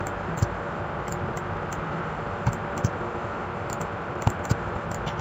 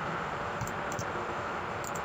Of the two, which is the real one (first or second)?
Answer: first